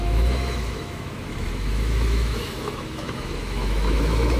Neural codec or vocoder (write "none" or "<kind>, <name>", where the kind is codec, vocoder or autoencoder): autoencoder, DAC-VAE